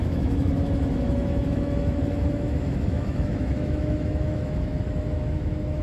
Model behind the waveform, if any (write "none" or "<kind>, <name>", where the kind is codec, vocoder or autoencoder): autoencoder, DAC-VAE